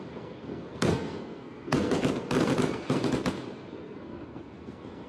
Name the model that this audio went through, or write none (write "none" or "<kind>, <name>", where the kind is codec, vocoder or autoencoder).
codec, SNAC